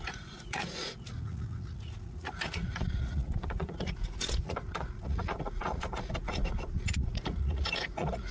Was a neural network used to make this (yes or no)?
yes